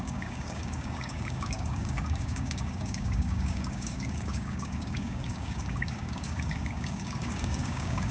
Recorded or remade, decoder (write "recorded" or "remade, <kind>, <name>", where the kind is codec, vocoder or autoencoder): remade, codec, DAC